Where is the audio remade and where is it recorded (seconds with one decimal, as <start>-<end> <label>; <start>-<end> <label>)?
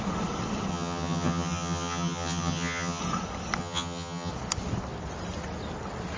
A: 0.0-0.7 recorded; 0.7-3.0 remade; 3.0-3.6 recorded; 3.6-4.3 remade; 4.3-6.2 recorded